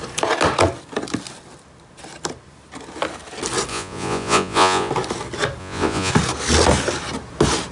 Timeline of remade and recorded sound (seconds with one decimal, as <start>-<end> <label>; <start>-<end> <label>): 0.0-3.7 recorded; 3.7-4.9 remade; 4.9-5.6 recorded; 5.6-6.1 remade; 6.1-7.7 recorded